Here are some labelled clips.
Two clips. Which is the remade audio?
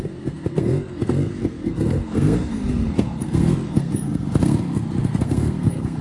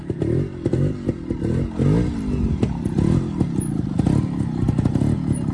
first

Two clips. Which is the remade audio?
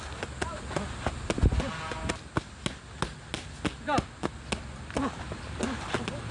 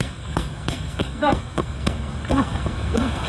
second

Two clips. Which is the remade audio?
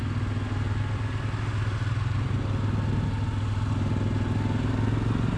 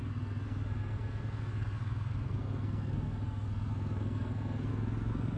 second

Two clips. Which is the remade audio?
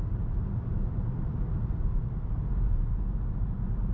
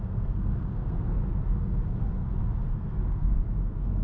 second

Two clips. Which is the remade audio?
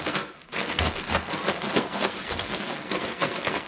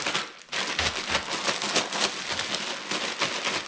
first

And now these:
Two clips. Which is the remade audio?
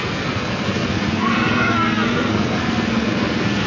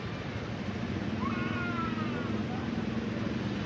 first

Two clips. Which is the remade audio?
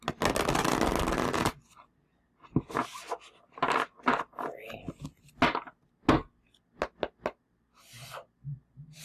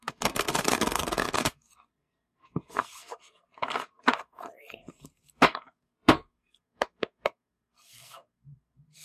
second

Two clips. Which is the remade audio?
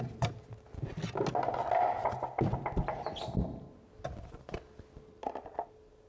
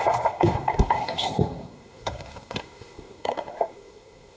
second